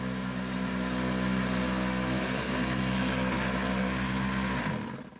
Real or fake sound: real